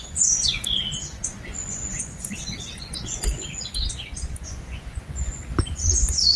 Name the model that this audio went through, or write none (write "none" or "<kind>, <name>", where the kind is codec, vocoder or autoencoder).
vocoder, Vocos